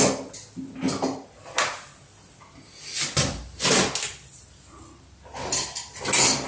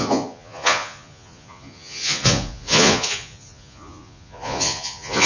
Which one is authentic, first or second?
first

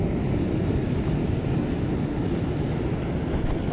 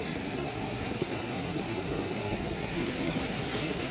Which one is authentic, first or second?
first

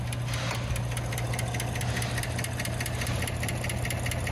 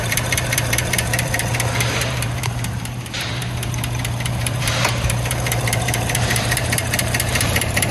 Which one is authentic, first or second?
first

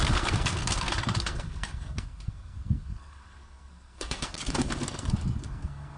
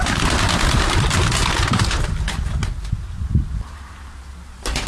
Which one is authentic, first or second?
second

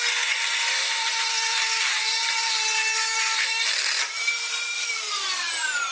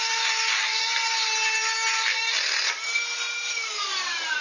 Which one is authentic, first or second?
second